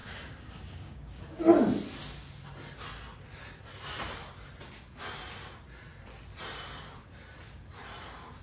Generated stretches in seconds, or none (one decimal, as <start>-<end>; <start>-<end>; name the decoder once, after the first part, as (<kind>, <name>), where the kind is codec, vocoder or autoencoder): 0.0-1.4 (codec, DAC)